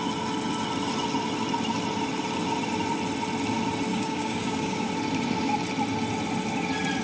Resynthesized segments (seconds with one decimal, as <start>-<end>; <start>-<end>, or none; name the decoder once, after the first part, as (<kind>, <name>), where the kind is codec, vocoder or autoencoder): 3.9-4.9 (codec, DAC)